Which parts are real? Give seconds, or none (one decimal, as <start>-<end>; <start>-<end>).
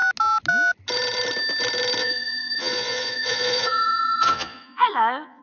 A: 0.0-2.0